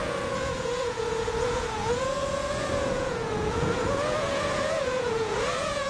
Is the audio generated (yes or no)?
yes